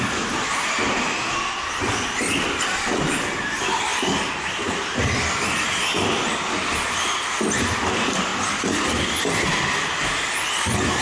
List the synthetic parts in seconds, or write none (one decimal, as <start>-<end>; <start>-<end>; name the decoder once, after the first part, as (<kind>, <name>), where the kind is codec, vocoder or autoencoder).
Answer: none